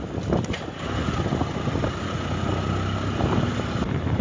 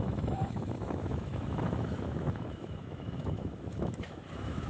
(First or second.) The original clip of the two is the first